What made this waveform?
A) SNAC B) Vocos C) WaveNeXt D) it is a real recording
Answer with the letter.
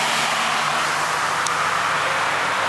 D